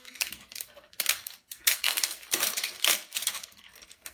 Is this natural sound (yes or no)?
no